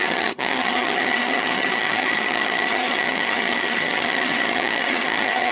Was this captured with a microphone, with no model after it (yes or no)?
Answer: no